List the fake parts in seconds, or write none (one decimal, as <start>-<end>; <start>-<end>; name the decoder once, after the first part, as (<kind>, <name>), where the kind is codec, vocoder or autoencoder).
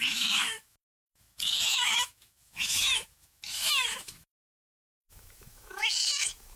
0.0-6.6 (autoencoder, DAC-VAE)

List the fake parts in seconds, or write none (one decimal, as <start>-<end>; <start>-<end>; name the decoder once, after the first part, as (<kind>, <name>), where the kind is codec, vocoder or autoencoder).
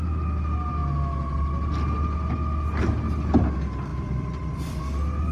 3.9-4.8 (vocoder, BigVGAN v2)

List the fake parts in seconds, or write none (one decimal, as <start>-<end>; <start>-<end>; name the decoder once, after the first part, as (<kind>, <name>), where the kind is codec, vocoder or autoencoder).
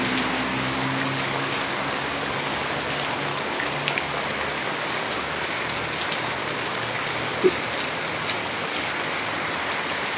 0.5-2.6 (codec, DAC); 3.3-6.0; 6.4-7.6; 8.4-8.9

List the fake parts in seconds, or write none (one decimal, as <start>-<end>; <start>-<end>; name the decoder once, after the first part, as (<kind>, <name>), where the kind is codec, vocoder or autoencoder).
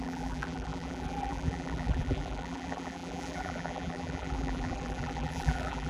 0.0-5.9 (vocoder, BigVGAN v2)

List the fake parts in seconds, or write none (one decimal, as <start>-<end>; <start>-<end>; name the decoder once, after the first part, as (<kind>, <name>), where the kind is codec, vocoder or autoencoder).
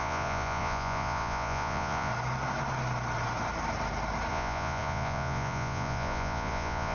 0.0-2.1 (vocoder, Vocos); 4.3-6.9